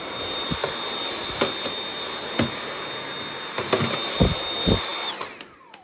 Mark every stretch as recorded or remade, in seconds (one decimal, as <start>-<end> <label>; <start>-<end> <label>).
0.0-5.8 recorded